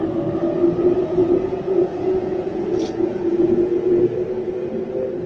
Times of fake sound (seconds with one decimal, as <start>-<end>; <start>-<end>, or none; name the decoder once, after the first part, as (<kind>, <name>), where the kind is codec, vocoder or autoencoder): 0.8-4.0 (vocoder, Vocos)